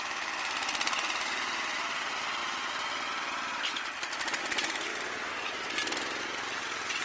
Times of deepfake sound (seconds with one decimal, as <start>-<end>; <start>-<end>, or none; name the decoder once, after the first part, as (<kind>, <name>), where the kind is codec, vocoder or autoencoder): 0.0-4.9 (vocoder, BigVGAN v2); 6.6-7.0